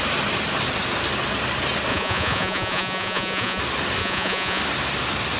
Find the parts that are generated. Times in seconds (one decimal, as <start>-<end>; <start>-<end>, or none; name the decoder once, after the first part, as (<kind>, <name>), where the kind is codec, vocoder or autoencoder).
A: 1.9-3.6 (vocoder, Vocos); 4.0-4.6